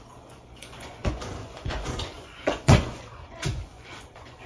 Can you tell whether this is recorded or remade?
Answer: remade